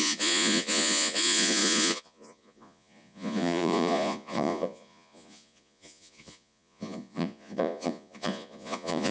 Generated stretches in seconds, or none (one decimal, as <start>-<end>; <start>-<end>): 0.0-9.1